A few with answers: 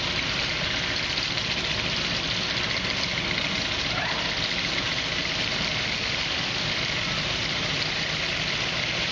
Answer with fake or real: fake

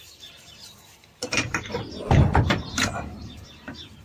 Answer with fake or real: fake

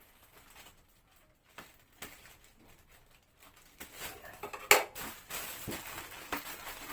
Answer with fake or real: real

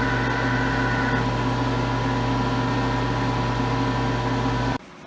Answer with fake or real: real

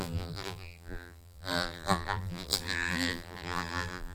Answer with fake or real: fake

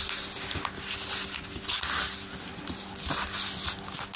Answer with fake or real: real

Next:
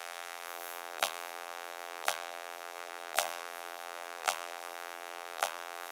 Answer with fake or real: fake